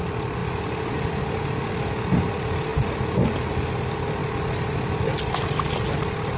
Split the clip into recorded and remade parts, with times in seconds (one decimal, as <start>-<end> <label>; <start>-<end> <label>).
0.0-6.4 recorded